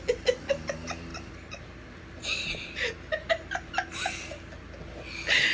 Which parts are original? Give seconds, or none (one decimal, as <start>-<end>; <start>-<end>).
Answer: 0.0-5.5